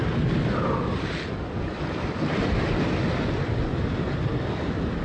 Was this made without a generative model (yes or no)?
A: yes